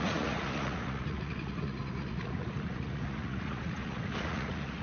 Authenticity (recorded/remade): remade